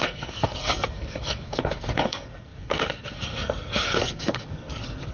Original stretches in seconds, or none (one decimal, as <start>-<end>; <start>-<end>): none